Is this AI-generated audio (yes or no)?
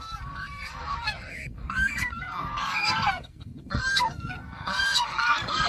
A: yes